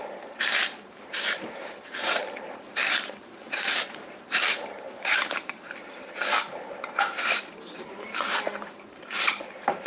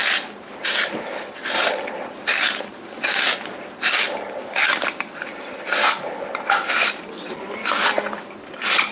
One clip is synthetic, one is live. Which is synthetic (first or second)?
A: first